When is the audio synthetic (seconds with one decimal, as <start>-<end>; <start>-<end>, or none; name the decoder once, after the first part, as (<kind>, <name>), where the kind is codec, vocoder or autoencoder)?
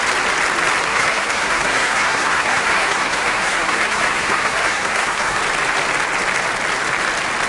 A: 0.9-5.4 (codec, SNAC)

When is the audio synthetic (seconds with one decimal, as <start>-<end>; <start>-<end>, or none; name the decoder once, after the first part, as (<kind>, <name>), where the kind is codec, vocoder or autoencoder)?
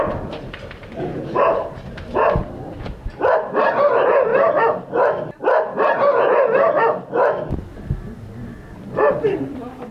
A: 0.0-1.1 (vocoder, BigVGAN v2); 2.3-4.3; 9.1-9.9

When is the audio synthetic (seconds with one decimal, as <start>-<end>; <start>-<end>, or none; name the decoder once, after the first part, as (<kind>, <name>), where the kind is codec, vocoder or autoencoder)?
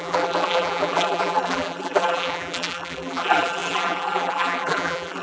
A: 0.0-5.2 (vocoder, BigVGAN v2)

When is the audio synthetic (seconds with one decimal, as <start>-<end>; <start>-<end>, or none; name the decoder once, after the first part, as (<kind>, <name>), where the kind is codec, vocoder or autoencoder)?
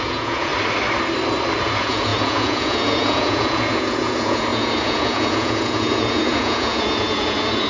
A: 0.0-0.5 (vocoder, Vocos); 1.6-7.7